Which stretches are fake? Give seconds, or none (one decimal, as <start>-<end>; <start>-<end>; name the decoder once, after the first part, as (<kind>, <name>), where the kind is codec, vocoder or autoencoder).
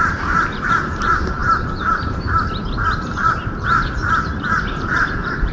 0.0-5.5 (vocoder, BigVGAN v2)